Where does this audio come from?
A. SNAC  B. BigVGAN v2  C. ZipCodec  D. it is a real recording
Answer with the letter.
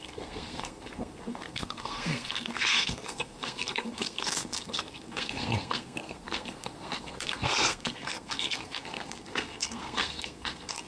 A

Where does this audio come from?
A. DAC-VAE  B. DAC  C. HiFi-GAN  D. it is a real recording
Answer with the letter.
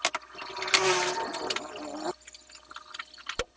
D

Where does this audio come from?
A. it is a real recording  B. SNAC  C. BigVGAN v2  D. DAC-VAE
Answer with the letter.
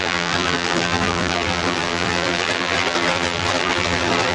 C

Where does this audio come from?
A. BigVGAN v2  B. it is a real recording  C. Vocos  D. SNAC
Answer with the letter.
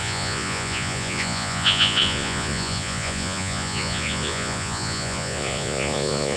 C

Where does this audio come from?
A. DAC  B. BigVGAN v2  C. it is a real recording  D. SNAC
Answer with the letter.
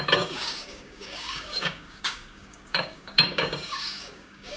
A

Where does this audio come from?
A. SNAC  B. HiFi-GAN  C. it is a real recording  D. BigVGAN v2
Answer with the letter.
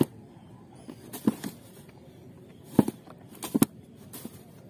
C